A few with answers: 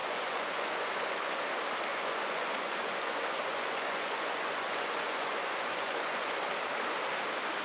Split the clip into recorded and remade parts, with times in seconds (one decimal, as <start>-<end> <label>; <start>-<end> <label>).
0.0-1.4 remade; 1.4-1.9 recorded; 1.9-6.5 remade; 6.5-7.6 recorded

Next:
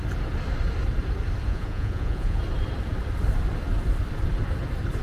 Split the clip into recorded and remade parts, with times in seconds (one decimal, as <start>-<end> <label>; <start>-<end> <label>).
0.0-1.5 recorded; 1.5-2.4 remade; 2.4-5.0 recorded

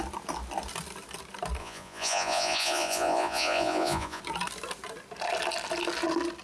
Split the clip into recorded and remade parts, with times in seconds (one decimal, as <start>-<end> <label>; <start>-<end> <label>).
0.0-1.6 recorded; 1.6-4.2 remade; 4.2-6.4 recorded

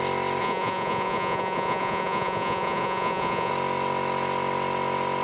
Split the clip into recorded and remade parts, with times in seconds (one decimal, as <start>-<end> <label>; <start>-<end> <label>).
0.0-0.4 recorded; 0.4-3.5 remade; 3.5-5.2 recorded